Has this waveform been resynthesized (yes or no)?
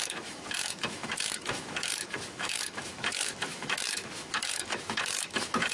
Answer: yes